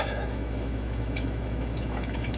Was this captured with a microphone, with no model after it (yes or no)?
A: no